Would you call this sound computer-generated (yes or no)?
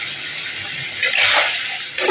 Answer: no